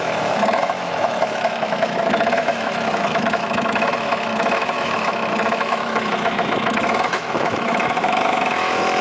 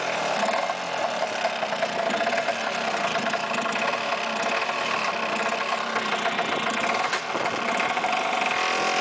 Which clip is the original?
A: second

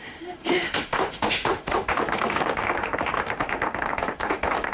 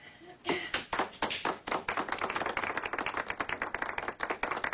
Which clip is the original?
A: second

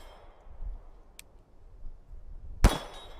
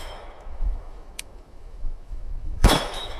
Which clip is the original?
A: first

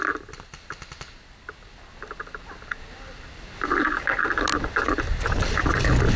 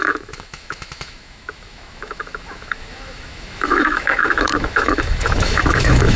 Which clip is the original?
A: first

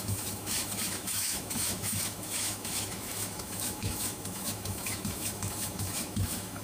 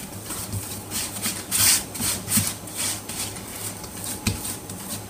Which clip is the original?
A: second